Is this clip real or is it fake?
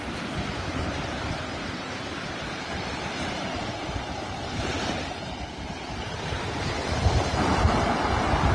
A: fake